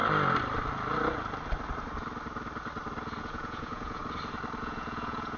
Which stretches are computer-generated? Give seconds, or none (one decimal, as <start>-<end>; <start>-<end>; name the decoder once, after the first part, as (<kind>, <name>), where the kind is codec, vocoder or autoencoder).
3.2-4.0 (vocoder, Vocos); 4.6-5.4